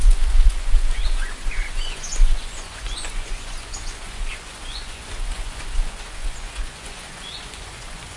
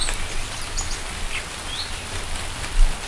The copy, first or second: first